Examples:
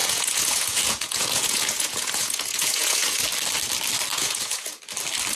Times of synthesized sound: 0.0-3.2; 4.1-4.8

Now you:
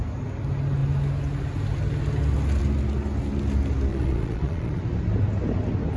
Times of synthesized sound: 3.9-4.8

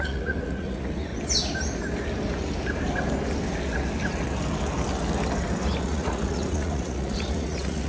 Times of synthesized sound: 0.0-1.1; 5.8-7.9

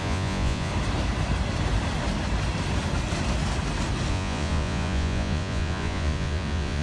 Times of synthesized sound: 0.0-0.7; 4.1-6.8

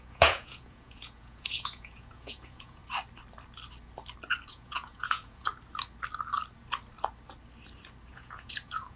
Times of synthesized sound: 0.0-2.8; 4.5-5.5; 8.1-9.0

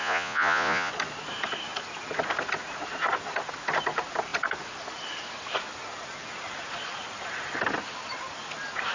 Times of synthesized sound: 0.0-0.9

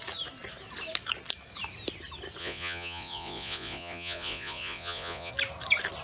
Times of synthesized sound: 2.4-5.3

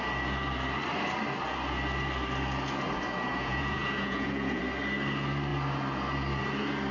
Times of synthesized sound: 3.3-4.6